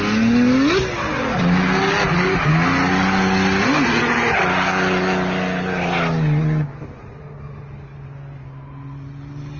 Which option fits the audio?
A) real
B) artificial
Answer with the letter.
A